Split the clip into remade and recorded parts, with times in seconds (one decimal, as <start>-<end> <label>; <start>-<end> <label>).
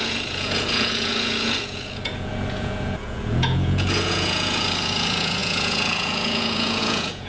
0.0-7.3 remade